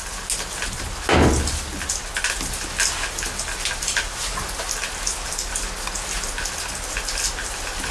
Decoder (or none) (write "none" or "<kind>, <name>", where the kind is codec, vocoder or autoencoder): none